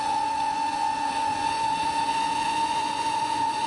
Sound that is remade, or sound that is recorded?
remade